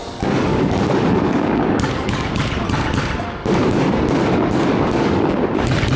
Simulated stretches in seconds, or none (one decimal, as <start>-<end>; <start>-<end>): 0.0-2.3; 3.4-5.4